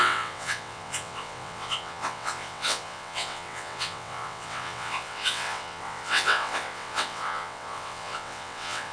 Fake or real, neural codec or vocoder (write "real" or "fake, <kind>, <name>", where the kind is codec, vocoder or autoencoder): fake, vocoder, WaveNeXt